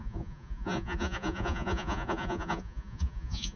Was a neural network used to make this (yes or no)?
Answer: yes